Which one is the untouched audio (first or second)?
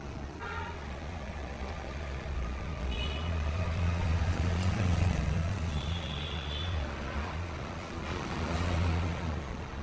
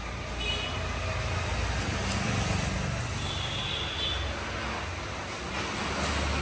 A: second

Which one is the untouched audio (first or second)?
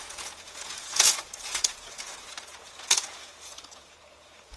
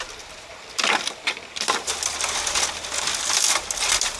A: second